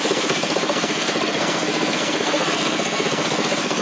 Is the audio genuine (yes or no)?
no